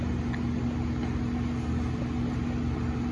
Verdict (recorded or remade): recorded